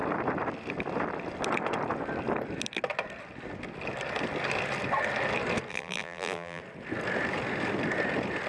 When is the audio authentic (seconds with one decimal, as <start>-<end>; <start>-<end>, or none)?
0.0-5.7; 6.6-8.5